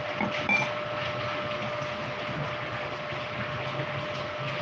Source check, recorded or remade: recorded